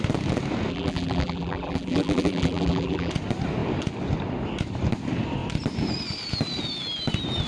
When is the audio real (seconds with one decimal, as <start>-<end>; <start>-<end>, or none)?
0.0-0.7; 3.1-7.5